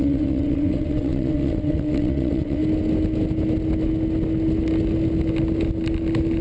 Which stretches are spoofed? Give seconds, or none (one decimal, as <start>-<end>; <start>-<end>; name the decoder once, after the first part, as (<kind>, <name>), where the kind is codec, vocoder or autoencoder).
0.0-2.6 (vocoder, WaveNeXt)